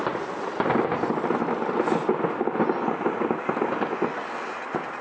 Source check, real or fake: real